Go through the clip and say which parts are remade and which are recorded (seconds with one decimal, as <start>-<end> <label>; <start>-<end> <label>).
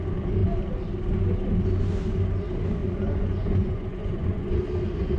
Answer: 0.0-2.8 recorded; 2.8-4.6 remade; 4.6-5.2 recorded